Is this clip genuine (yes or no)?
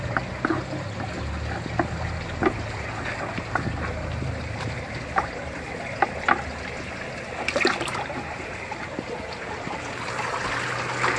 yes